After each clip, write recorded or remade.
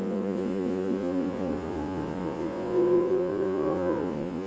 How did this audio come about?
remade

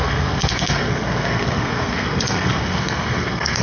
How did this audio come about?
remade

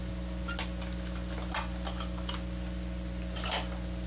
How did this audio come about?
recorded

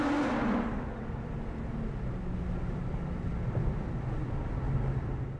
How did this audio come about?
recorded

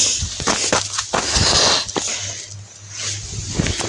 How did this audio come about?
recorded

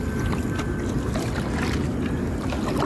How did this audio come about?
recorded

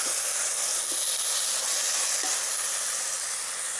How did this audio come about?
recorded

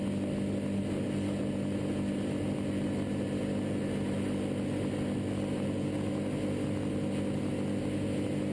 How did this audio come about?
recorded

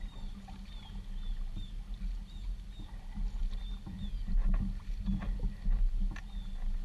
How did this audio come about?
recorded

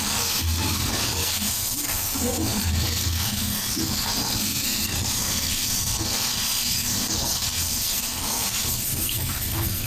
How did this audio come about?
remade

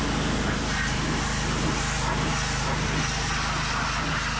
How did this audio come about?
recorded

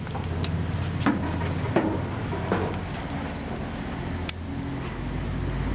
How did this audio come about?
recorded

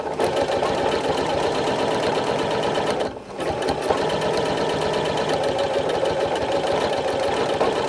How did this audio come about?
recorded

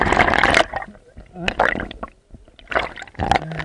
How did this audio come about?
recorded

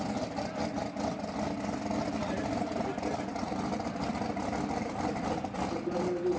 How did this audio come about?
recorded